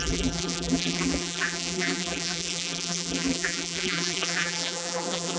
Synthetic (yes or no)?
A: yes